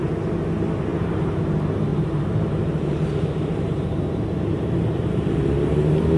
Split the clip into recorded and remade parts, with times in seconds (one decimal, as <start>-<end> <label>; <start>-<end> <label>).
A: 0.0-0.9 recorded; 0.9-1.4 remade; 1.4-1.9 recorded; 1.9-5.3 remade; 5.3-6.2 recorded